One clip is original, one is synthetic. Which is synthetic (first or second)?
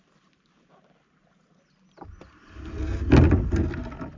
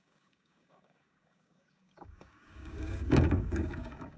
second